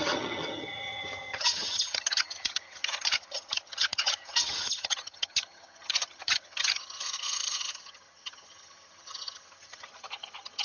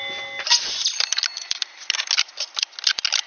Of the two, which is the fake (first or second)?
first